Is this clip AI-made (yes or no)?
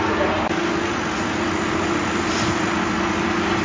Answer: no